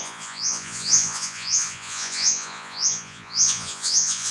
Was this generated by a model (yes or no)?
yes